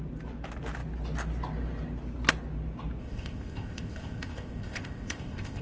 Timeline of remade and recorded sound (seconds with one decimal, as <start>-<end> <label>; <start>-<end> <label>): 0.0-3.0 recorded; 3.0-5.6 remade

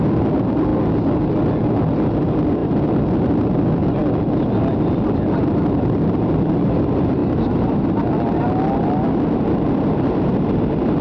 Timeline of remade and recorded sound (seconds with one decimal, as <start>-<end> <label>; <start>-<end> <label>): 0.0-0.7 remade; 0.7-2.1 recorded; 2.1-4.0 remade; 4.0-4.7 recorded; 4.7-7.2 remade; 7.2-11.0 recorded

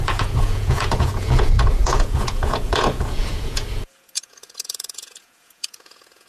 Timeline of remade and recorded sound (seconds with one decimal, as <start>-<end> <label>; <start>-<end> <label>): 0.0-6.3 remade

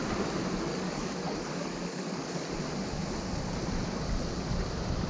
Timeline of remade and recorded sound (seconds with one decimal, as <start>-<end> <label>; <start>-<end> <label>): 0.0-0.7 recorded; 0.7-2.5 remade; 2.5-5.1 recorded

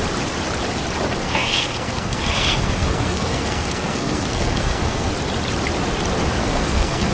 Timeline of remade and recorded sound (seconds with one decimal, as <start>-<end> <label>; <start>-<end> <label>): 0.0-1.2 recorded; 1.2-5.1 remade; 5.1-6.4 recorded; 6.4-7.1 remade

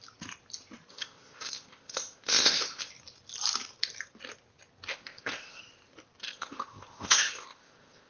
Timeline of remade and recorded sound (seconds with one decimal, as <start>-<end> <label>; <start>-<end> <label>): 0.0-0.9 recorded; 0.9-2.9 remade; 2.9-4.9 recorded; 4.9-5.6 remade; 5.6-6.2 recorded; 6.2-8.1 remade

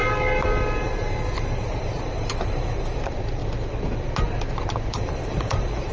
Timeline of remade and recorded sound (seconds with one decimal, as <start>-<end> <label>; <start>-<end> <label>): 0.0-0.8 recorded; 0.8-3.4 remade; 3.4-4.8 recorded; 4.8-5.9 remade

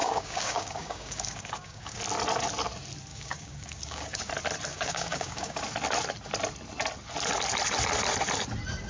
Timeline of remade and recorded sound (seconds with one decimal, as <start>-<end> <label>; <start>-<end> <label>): 0.0-2.0 remade; 2.0-3.1 recorded; 3.1-4.3 remade; 4.3-4.7 recorded; 4.7-5.6 remade; 5.6-8.9 recorded